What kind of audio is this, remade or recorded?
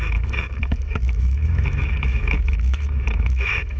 remade